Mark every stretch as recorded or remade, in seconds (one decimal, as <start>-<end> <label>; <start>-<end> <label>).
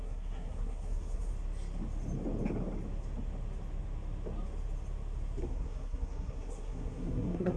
0.0-1.3 remade; 1.3-5.4 recorded; 5.4-7.6 remade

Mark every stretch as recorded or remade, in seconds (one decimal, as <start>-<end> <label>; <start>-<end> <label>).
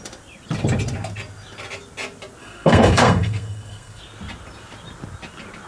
0.0-2.4 recorded; 2.4-4.0 remade; 4.0-5.7 recorded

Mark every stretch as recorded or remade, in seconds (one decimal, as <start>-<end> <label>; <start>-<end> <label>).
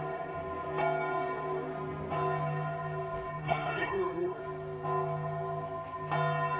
0.0-3.4 recorded; 3.4-4.4 remade; 4.4-6.6 recorded